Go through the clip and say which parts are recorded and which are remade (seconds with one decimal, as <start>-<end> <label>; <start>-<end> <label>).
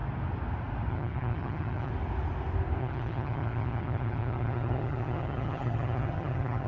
0.0-0.9 recorded; 0.9-1.9 remade; 1.9-2.8 recorded; 2.8-6.7 remade